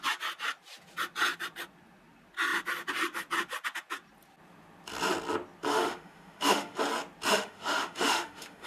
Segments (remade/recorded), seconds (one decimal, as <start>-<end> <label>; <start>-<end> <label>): 0.0-5.7 recorded; 5.7-6.8 remade; 6.8-7.3 recorded; 7.3-8.7 remade